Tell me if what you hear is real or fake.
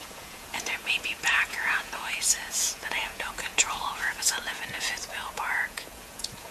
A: fake